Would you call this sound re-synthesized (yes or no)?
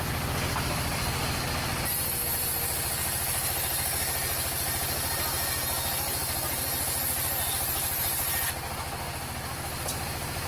no